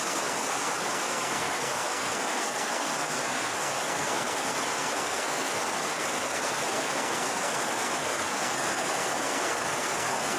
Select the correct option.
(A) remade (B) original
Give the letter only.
A